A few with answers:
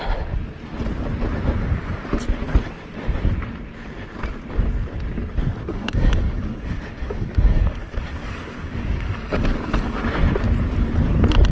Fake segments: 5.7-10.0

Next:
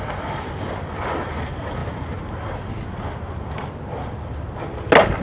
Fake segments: none

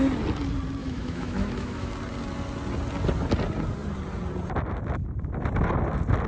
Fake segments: 0.8-1.9

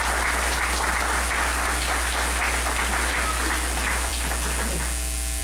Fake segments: none

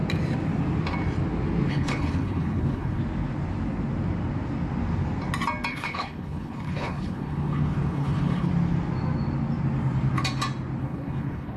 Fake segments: 1.7-3.0; 5.7-8.5; 10.8-11.6

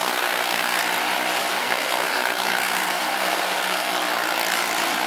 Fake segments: 0.0-0.8; 1.5-3.9